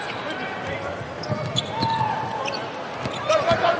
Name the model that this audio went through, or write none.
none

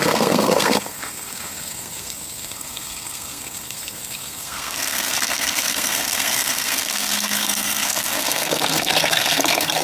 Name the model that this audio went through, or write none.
codec, SNAC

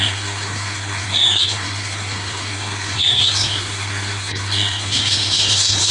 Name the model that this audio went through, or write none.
codec, SNAC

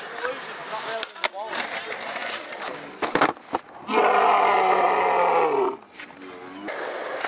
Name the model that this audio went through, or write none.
none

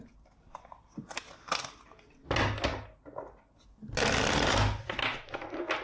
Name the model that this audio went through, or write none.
none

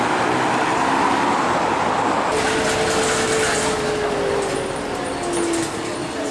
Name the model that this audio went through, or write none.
none